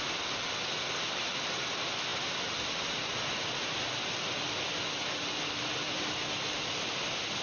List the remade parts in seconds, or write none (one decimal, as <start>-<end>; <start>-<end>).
none